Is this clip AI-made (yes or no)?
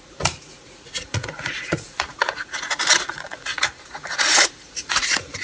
yes